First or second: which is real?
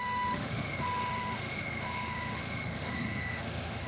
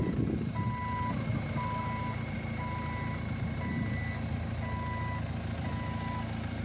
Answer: second